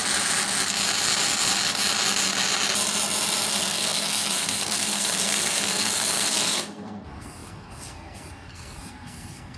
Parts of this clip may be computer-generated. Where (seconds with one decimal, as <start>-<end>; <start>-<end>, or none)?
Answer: 3.5-9.6